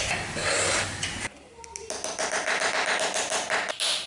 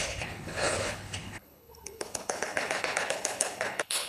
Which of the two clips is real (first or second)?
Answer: first